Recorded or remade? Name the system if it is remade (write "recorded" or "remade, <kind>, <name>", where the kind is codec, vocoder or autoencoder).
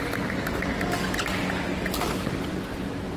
recorded